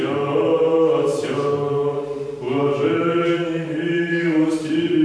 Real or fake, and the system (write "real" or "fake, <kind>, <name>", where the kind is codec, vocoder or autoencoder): fake, vocoder, BigVGAN v2